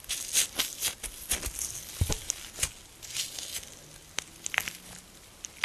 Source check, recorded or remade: recorded